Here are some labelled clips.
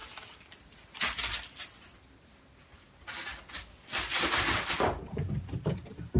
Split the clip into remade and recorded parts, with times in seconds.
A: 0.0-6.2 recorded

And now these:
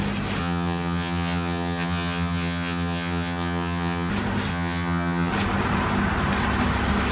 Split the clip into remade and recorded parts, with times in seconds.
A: 0.0-0.4 recorded; 0.4-4.1 remade; 4.1-4.5 recorded; 4.5-5.3 remade; 5.3-7.1 recorded

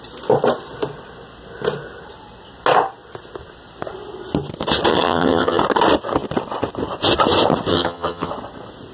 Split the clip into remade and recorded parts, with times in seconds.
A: 0.0-4.9 recorded; 4.9-5.6 remade; 5.6-7.7 recorded; 7.7-8.3 remade; 8.3-8.9 recorded

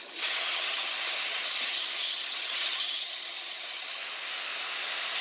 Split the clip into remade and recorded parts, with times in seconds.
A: 0.0-4.0 remade; 4.0-5.2 recorded